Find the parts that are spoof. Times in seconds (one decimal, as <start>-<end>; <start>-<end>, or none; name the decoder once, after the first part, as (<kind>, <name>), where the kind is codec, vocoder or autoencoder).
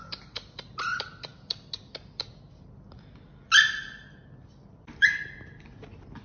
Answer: none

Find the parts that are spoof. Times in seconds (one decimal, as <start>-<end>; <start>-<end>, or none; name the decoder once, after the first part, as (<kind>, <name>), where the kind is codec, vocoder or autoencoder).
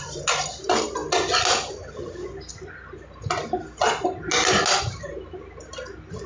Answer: none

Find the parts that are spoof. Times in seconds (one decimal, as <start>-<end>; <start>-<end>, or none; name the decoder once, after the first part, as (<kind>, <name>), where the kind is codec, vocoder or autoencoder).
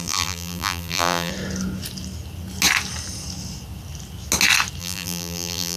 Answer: 0.0-1.3 (vocoder, BigVGAN v2); 4.8-5.8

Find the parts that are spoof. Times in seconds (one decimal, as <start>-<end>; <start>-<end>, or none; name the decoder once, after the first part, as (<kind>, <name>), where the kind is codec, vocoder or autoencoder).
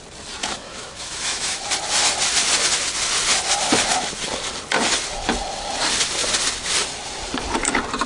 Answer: 0.4-1.6 (autoencoder, DAC-VAE)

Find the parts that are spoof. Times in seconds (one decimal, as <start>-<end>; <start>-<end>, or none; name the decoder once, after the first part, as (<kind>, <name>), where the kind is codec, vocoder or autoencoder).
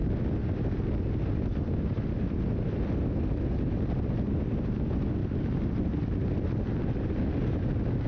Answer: none